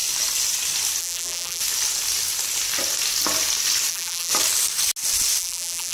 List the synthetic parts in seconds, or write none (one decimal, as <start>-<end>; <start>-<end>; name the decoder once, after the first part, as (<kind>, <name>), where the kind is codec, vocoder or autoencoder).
1.0-1.6 (vocoder, BigVGAN v2); 3.9-4.3; 5.4-5.9